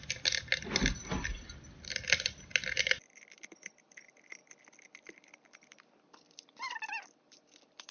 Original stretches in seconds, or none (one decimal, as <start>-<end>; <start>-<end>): 0.0-7.9